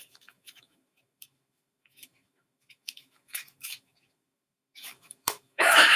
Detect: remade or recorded remade